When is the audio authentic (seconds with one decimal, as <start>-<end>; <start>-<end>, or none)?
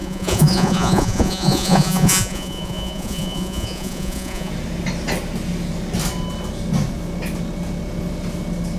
4.5-8.8